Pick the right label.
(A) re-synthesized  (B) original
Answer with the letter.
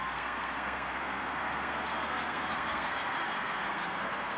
A